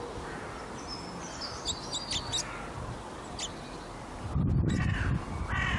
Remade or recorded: recorded